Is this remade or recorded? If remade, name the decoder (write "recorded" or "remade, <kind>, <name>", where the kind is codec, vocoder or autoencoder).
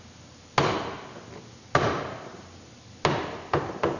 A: recorded